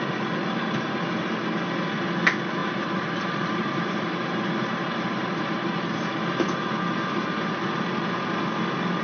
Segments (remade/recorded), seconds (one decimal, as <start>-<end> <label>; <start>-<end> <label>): 0.0-2.6 recorded; 2.6-6.0 remade; 6.0-9.0 recorded